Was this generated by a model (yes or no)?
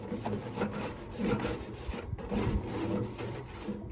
no